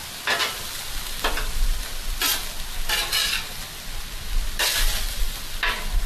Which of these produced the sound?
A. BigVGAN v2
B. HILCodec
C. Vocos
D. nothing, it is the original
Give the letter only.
D